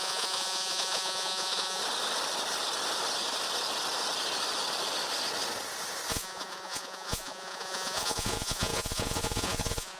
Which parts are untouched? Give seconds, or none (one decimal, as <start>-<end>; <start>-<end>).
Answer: 1.8-6.1